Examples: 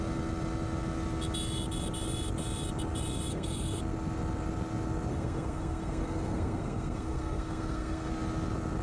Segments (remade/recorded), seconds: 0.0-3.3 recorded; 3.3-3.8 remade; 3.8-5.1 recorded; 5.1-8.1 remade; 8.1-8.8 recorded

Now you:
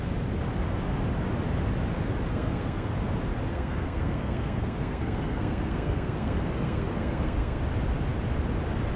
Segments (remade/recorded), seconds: 0.0-2.3 recorded; 2.3-2.9 remade; 2.9-3.5 recorded; 3.5-7.6 remade; 7.6-9.0 recorded

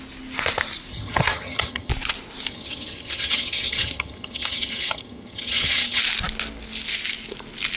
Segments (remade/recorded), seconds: 0.0-0.9 recorded; 0.9-1.9 remade; 1.9-2.5 recorded; 2.5-6.0 remade; 6.0-7.8 recorded

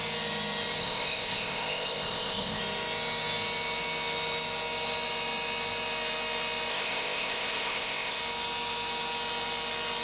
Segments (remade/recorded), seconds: 0.0-0.8 recorded; 0.8-2.6 remade; 2.6-6.7 recorded; 6.7-8.2 remade; 8.2-10.0 recorded

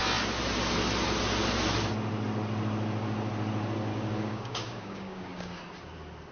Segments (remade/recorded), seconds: 0.0-3.9 recorded; 3.9-5.6 remade; 5.6-6.3 recorded

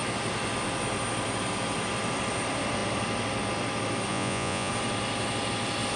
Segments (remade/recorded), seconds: 0.0-4.1 recorded; 4.1-4.7 remade; 4.7-6.0 recorded

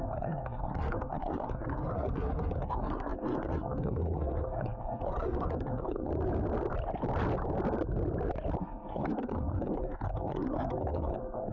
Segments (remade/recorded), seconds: 0.0-6.1 remade; 6.1-8.6 recorded; 8.6-11.5 remade

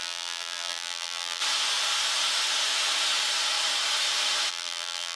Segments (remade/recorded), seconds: 0.0-1.4 remade; 1.4-4.5 recorded; 4.5-5.2 remade